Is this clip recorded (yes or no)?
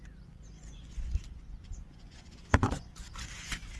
no